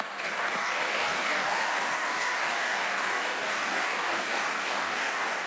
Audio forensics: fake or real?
fake